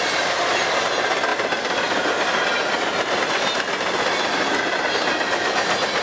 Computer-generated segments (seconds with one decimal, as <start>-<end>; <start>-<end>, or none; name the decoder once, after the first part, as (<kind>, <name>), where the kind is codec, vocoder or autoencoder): none